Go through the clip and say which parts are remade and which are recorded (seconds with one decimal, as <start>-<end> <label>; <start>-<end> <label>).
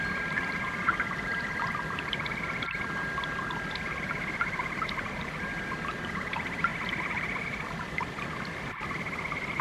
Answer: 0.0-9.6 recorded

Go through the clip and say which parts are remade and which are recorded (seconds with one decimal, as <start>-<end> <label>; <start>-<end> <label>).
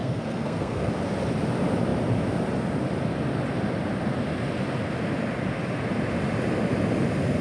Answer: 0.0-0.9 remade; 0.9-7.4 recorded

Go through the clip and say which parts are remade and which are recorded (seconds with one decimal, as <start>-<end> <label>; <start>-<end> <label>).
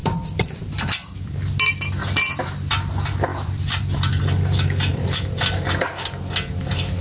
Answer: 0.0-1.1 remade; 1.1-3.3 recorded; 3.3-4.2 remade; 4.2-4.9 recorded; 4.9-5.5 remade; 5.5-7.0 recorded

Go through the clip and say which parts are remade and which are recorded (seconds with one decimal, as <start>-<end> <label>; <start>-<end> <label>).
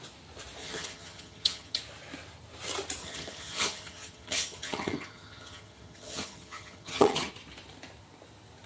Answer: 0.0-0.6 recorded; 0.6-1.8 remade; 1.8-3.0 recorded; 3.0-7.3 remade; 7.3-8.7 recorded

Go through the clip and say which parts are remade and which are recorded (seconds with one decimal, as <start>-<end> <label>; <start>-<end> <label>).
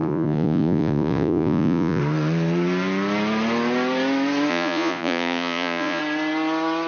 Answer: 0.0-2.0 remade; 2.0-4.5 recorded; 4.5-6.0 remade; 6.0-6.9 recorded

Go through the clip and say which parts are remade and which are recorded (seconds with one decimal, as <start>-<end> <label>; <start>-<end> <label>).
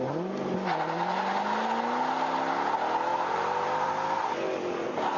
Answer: 0.0-3.1 recorded; 3.1-3.9 remade; 3.9-5.2 recorded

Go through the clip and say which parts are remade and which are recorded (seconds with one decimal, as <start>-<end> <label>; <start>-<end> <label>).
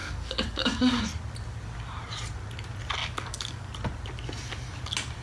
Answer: 0.0-1.0 remade; 1.0-3.0 recorded; 3.0-3.7 remade; 3.7-5.2 recorded